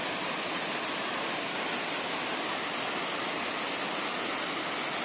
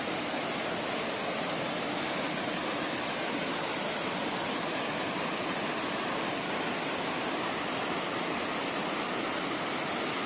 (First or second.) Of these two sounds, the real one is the first